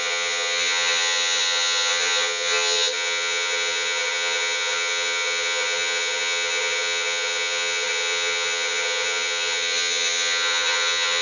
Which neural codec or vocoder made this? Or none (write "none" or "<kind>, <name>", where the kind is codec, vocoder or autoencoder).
vocoder, HiFi-GAN